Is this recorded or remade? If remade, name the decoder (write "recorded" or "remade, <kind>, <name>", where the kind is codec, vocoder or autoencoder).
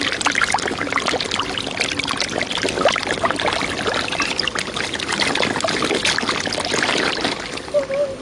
recorded